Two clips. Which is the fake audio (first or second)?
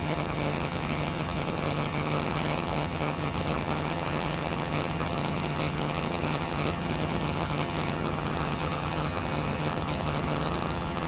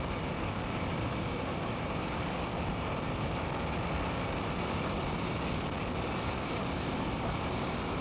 first